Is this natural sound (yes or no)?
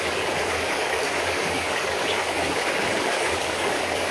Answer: no